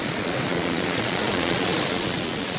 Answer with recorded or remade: remade